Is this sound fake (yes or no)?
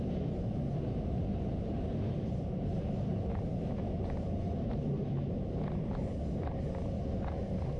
yes